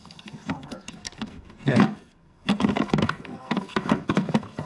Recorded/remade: remade